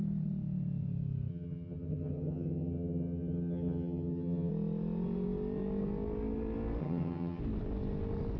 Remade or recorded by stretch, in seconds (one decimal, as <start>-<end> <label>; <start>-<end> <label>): 0.0-1.3 recorded; 1.3-4.5 remade; 4.5-6.8 recorded; 6.8-7.4 remade; 7.4-8.4 recorded